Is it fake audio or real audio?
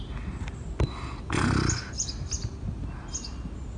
real